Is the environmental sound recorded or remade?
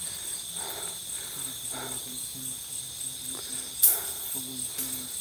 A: recorded